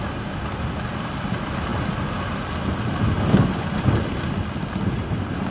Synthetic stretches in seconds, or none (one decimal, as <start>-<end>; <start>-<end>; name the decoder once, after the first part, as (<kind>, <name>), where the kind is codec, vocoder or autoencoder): none